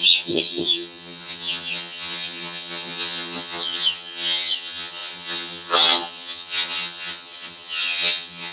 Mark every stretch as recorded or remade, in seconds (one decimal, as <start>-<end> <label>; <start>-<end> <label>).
0.0-8.5 remade